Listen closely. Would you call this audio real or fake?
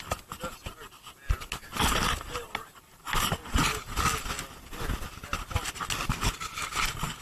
real